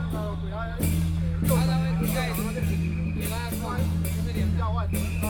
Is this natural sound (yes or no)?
yes